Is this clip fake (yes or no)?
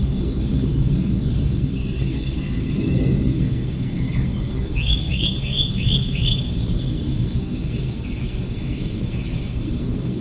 yes